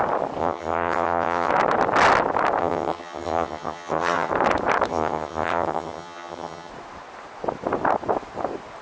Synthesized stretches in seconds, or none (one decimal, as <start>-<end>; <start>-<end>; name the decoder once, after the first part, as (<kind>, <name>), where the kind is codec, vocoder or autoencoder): 0.4-1.5 (vocoder, HiFi-GAN); 2.6-4.3; 4.9-6.7